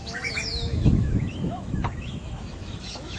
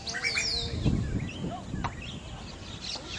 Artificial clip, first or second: first